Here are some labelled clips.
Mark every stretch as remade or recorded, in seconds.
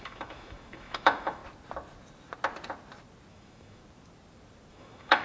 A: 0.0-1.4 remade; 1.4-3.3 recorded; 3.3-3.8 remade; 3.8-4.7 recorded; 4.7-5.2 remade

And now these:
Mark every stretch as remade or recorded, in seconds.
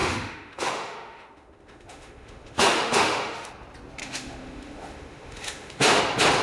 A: 0.0-3.5 remade; 3.5-4.0 recorded; 4.0-6.0 remade; 6.0-6.4 recorded